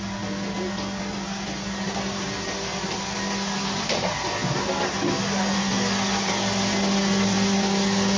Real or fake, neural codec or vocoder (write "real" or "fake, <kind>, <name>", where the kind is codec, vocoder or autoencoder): real